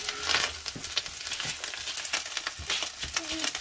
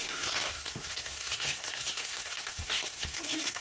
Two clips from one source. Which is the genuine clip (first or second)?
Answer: first